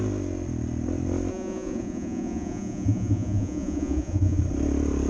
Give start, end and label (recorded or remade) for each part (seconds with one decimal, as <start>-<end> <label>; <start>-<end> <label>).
0.0-1.3 recorded; 1.3-4.4 remade; 4.4-5.1 recorded